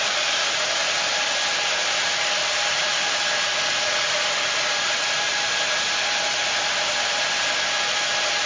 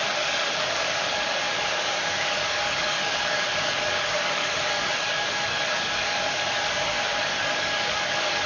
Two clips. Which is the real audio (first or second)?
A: first